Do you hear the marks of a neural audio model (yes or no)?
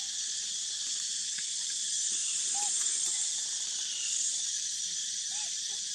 yes